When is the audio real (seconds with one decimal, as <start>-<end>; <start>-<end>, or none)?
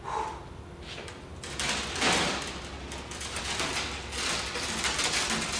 0.0-5.6